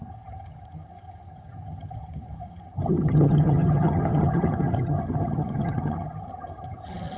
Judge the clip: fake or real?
fake